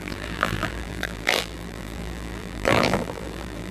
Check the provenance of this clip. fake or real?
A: fake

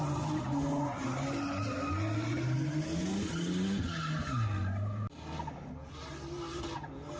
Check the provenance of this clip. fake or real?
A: real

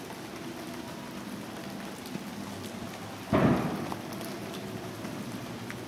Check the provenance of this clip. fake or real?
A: real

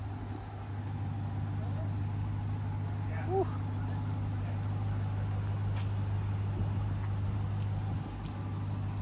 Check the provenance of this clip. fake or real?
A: real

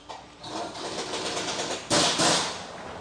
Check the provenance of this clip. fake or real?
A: fake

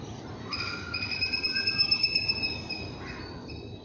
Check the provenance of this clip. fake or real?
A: real